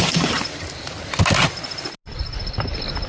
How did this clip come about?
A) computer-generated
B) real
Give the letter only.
B